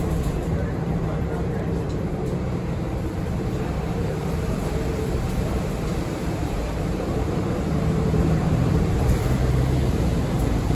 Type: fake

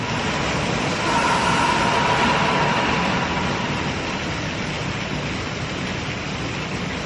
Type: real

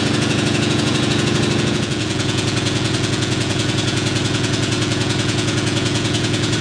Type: fake